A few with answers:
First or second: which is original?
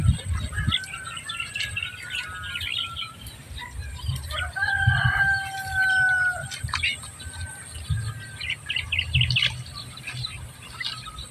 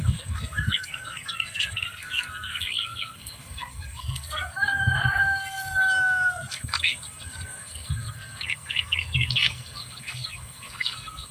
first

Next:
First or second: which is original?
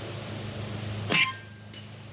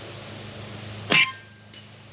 second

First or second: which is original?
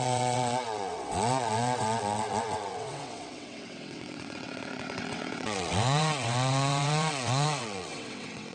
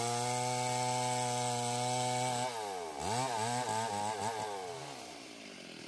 second